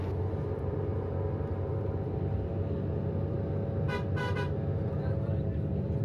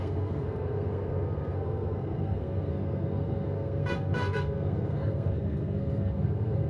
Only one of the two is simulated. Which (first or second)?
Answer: second